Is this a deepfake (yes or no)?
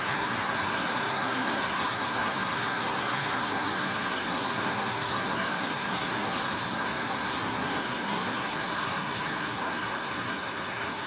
yes